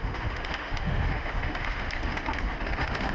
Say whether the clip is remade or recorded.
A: remade